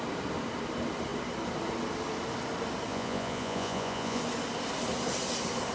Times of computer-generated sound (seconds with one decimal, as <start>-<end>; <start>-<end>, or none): 2.9-4.2